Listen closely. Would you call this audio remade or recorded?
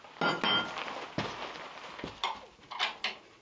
recorded